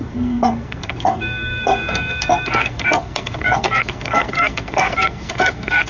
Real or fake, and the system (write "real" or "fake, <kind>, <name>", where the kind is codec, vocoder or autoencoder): fake, codec, SNAC